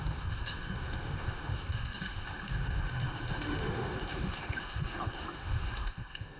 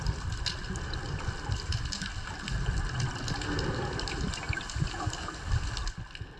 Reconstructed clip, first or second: first